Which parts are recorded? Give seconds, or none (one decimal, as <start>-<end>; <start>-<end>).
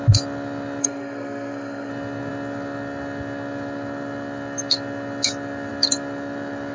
0.0-0.8; 1.9-6.7